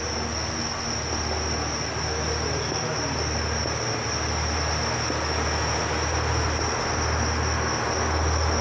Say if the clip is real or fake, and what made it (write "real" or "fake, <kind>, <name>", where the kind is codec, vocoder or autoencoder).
real